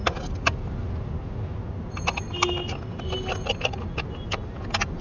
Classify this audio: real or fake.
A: real